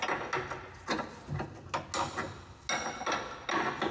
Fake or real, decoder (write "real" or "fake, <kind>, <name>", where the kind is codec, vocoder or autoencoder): real